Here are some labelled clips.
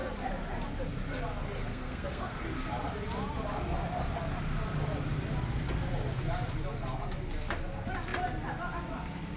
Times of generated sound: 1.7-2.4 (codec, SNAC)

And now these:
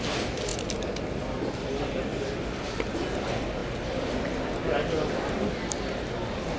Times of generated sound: none

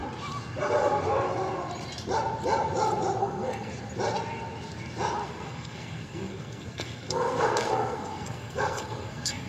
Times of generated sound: 3.2-3.7 (codec, SNAC); 5.2-9.5

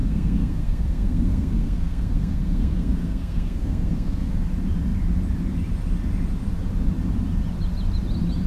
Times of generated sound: 0.0-4.4 (codec, SNAC)

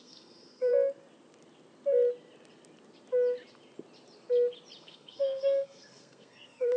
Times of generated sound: 0.0-0.7 (codec, SNAC); 4.8-6.8